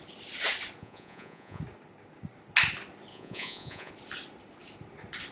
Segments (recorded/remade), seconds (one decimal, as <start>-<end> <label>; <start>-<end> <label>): 0.0-0.8 recorded; 0.8-1.6 remade; 1.6-3.1 recorded; 3.1-3.9 remade; 3.9-5.3 recorded